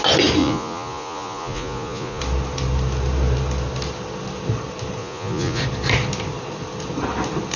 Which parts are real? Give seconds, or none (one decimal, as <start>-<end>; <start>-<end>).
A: 0.0-0.4; 2.2-5.0; 5.6-7.6